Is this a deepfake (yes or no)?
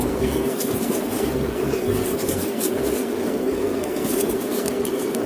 yes